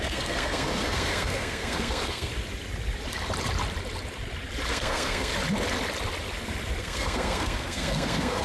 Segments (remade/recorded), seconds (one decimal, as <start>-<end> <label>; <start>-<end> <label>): 0.0-2.3 remade; 2.3-4.7 recorded; 4.7-5.3 remade; 5.3-6.8 recorded; 6.8-8.4 remade